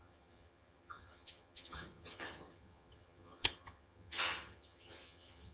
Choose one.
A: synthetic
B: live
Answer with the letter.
A